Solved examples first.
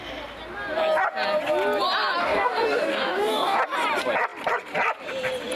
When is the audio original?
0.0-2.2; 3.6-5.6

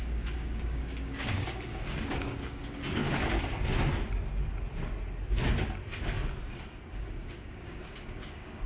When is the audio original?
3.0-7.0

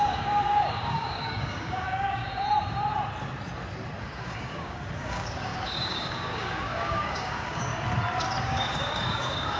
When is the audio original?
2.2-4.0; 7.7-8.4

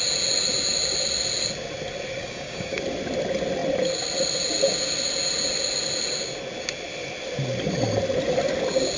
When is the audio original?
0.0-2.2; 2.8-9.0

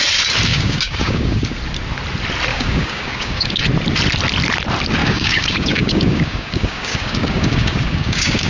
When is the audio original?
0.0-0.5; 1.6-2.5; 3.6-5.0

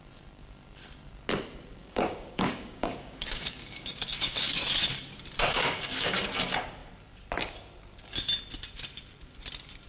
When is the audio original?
0.0-1.8; 4.6-5.5; 6.2-9.9

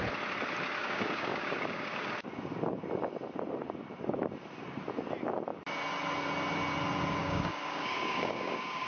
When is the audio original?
0.0-0.8; 2.1-7.2

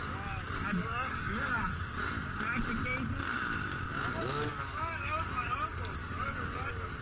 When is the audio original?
0.0-0.8; 2.0-4.2